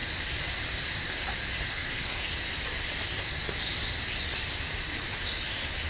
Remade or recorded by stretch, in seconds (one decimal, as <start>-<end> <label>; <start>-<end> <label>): 0.0-1.7 recorded; 1.7-2.3 remade; 2.3-5.9 recorded